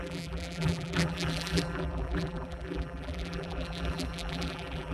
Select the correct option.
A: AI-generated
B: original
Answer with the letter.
A